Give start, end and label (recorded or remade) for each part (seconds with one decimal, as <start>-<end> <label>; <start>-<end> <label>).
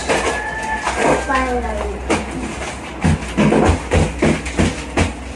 0.0-5.4 recorded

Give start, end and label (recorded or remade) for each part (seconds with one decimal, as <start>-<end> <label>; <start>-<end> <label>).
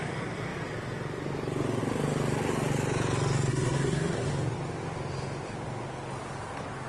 0.0-3.5 recorded; 3.5-4.3 remade; 4.3-6.9 recorded